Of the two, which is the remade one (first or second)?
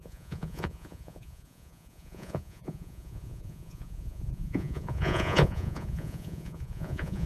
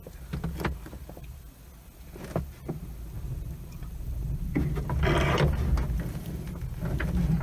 first